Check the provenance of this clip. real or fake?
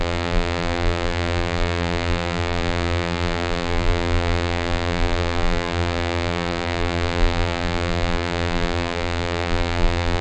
fake